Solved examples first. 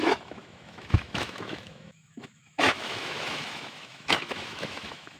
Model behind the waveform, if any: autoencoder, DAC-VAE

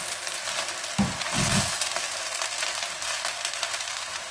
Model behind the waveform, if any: none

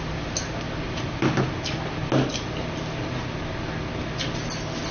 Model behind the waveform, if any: none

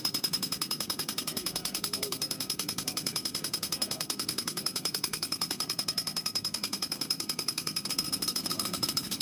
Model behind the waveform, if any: codec, SNAC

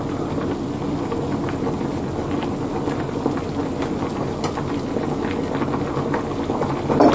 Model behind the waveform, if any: none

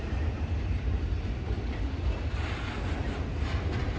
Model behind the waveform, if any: none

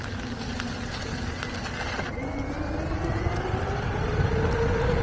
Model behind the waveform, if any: none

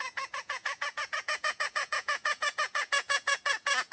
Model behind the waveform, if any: vocoder, Vocos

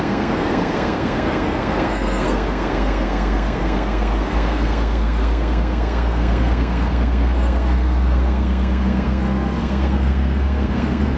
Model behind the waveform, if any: codec, SNAC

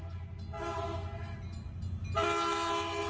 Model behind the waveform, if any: none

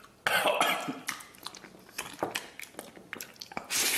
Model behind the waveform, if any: none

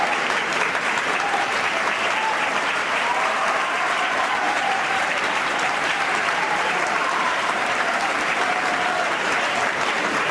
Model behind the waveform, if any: vocoder, BigVGAN v2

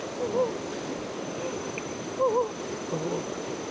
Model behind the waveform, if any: none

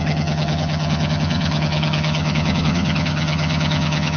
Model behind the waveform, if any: vocoder, HiFi-GAN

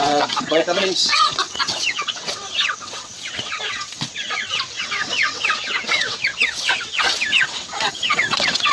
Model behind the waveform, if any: vocoder, WaveNeXt